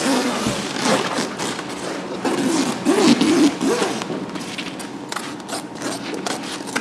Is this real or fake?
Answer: real